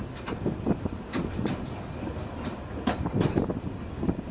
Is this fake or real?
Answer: real